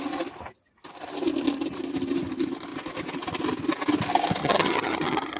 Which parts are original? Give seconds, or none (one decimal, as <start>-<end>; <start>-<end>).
0.0-4.4